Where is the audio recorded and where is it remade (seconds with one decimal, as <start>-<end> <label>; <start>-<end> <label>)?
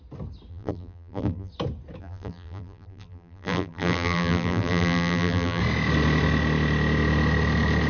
0.0-0.5 recorded; 0.5-1.5 remade; 1.5-2.0 recorded; 2.0-5.6 remade; 5.6-7.9 recorded